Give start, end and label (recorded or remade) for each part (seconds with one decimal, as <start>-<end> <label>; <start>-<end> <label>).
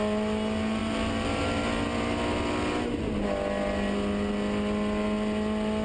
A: 0.0-5.8 recorded